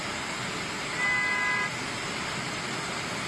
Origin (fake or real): real